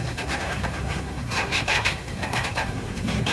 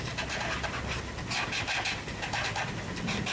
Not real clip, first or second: first